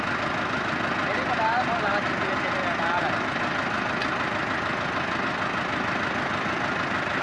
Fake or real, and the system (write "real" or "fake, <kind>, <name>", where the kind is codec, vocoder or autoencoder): real